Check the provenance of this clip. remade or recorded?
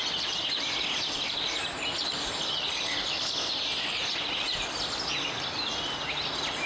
recorded